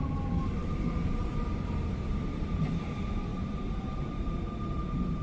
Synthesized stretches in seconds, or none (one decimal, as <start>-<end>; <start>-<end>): 0.6-2.4; 3.3-5.2